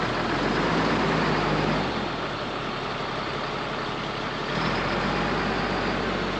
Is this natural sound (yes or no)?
yes